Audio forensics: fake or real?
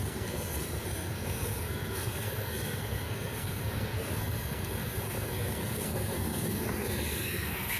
fake